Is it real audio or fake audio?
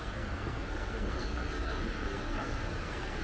fake